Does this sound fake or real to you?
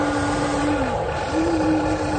fake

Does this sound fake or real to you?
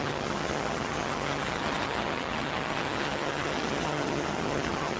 fake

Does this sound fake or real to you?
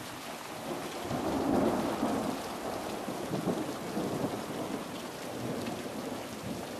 real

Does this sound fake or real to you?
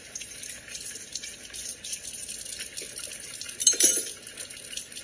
real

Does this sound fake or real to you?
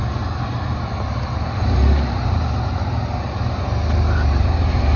real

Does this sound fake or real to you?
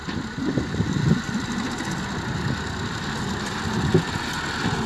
real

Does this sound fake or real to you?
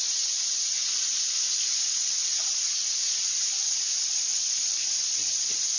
real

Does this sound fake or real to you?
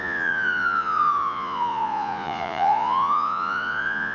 fake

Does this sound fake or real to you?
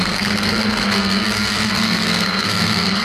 fake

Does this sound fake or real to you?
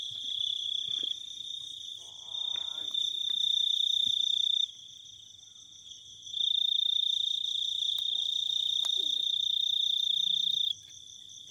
real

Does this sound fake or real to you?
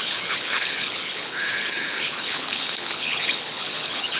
fake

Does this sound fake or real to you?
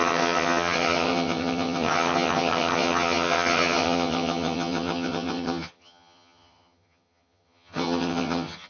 fake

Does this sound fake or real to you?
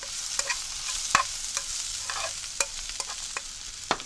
fake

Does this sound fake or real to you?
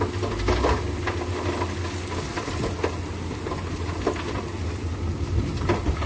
real